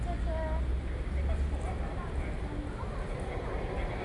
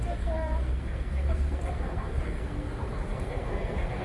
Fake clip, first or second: second